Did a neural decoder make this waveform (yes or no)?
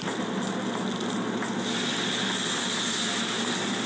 no